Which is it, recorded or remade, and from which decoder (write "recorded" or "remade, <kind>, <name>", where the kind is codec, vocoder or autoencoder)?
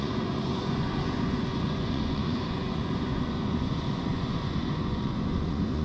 remade, vocoder, Vocos